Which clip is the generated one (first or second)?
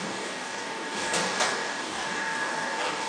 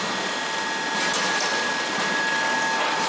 first